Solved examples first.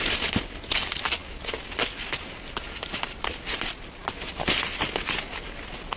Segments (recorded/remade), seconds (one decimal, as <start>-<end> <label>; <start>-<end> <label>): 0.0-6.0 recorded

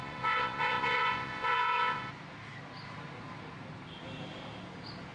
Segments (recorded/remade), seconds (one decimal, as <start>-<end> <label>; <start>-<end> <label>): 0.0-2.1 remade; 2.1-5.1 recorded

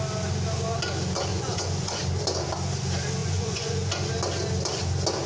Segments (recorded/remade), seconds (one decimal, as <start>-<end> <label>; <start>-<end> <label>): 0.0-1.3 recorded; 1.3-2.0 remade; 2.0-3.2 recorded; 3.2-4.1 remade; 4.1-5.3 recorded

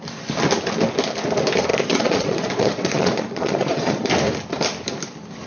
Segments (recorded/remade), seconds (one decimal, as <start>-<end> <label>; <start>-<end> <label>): 0.0-1.7 recorded; 1.7-4.1 remade; 4.1-5.5 recorded

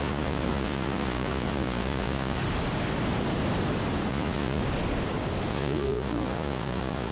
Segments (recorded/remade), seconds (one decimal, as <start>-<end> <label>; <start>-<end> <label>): 0.0-2.4 remade; 2.4-4.1 recorded; 4.1-4.6 remade; 4.6-5.5 recorded; 5.5-7.1 remade

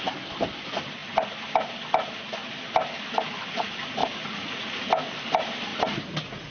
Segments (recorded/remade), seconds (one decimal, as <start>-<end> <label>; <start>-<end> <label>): 0.0-4.0 recorded; 4.0-4.9 remade; 4.9-5.7 recorded; 5.7-6.5 remade